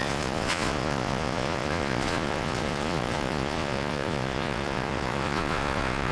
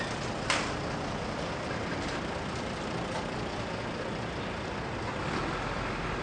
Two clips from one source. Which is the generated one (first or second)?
first